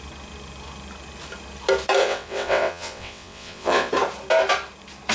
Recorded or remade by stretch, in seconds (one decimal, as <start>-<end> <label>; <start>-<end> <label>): 0.0-2.0 recorded; 2.0-3.9 remade; 3.9-5.1 recorded